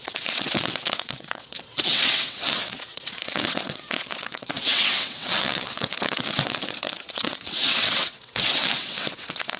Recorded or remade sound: remade